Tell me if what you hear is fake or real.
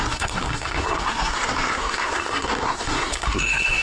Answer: fake